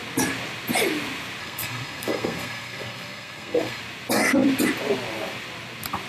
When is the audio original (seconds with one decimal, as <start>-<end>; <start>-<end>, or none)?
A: 0.0-1.4; 3.8-6.1